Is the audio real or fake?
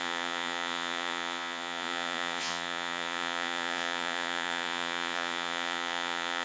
fake